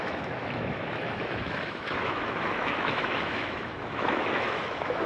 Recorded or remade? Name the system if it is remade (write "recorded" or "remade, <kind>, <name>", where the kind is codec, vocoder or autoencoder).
remade, autoencoder, DAC-VAE